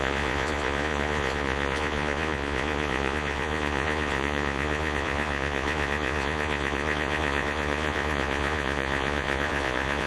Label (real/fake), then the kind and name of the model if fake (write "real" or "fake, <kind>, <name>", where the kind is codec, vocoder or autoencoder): fake, vocoder, Vocos